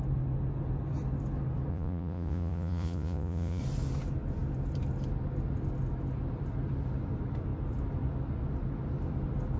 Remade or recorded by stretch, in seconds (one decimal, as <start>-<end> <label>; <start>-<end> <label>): 0.0-1.7 recorded; 1.7-3.6 remade; 3.6-9.6 recorded